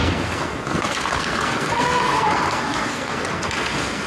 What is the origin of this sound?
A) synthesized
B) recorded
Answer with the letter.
A